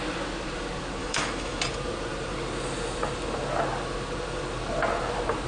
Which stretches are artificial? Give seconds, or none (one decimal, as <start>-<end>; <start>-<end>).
1.0-1.6